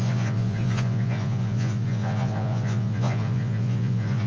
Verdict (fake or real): fake